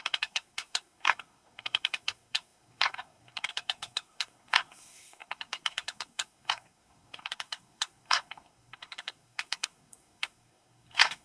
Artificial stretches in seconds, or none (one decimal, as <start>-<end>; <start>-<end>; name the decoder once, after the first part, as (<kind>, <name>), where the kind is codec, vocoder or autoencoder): 0.0-11.2 (codec, SNAC)